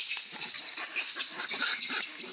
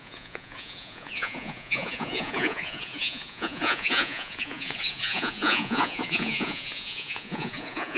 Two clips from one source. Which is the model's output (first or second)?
second